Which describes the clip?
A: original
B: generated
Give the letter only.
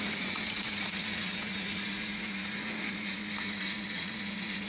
B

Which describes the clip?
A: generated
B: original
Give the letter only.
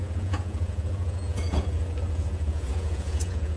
A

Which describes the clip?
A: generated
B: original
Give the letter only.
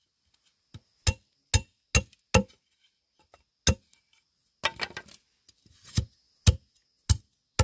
B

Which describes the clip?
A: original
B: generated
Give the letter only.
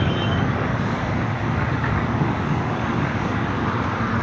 B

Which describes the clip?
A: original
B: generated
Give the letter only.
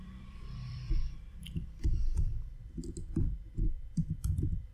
B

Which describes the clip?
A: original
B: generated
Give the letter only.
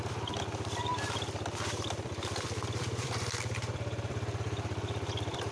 B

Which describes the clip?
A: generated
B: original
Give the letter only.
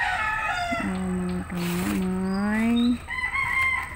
B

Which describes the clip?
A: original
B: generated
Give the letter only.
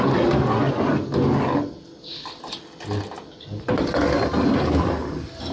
A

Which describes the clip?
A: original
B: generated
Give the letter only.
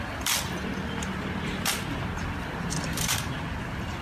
B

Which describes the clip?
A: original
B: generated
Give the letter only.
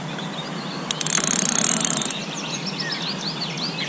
A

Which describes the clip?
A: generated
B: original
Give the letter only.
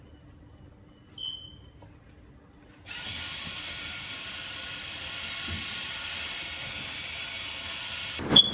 B